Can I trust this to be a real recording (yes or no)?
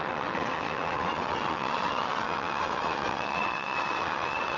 no